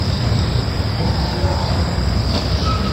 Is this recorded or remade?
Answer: remade